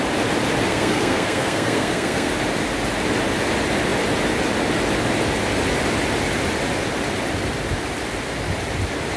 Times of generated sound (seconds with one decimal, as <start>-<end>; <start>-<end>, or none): 0.7-2.3